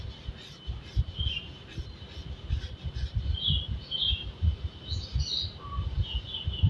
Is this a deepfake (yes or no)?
no